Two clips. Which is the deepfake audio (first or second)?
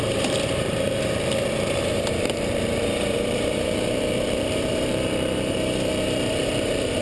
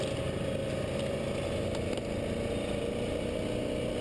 first